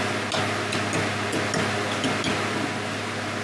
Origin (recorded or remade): recorded